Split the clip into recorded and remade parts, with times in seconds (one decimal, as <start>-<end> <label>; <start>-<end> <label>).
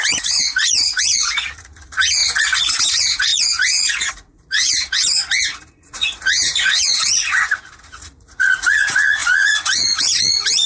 0.0-2.2 remade; 2.2-2.8 recorded; 2.8-10.7 remade